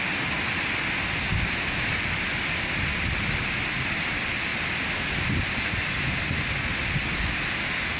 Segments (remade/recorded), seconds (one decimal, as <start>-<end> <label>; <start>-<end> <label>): 0.0-4.5 recorded; 4.5-6.2 remade; 6.2-8.0 recorded